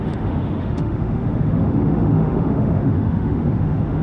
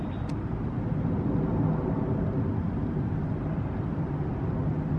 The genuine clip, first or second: second